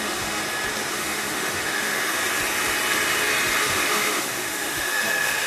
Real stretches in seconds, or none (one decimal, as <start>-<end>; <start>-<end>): 0.4-0.9; 2.2-3.6